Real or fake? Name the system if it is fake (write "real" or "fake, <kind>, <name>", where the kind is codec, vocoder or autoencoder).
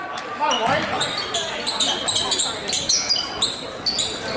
real